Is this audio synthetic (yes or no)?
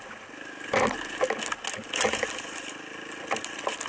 no